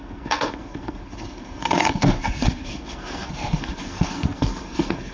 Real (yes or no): no